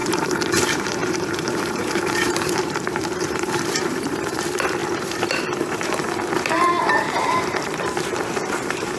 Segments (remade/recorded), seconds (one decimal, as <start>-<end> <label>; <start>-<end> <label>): 0.0-9.0 remade